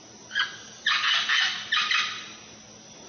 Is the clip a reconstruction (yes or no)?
no